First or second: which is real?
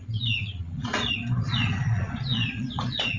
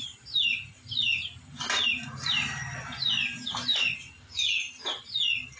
second